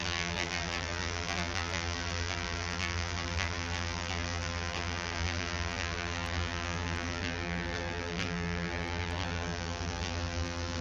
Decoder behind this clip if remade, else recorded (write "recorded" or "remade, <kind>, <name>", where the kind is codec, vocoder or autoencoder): remade, vocoder, BigVGAN v2